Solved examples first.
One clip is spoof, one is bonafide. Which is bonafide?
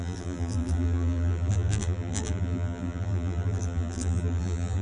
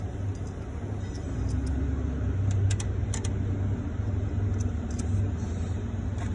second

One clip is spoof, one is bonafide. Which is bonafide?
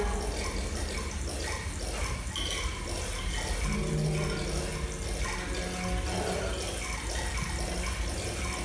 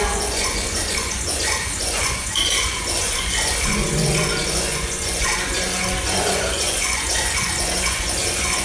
first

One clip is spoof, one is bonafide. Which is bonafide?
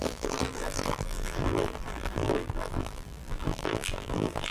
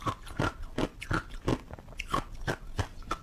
second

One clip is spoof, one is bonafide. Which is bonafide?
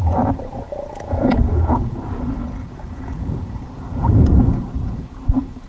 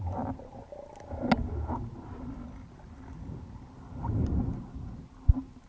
second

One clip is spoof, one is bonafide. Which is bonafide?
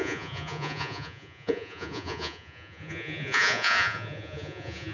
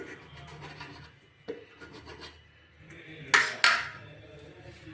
second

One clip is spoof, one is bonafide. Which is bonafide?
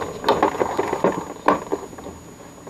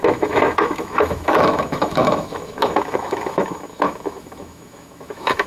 first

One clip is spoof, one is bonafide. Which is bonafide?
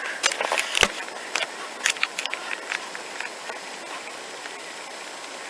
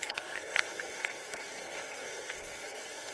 first